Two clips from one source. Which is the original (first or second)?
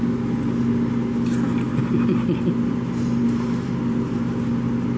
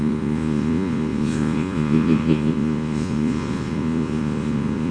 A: first